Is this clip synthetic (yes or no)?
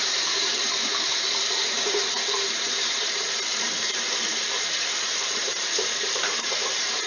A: yes